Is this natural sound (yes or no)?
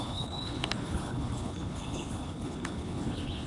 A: no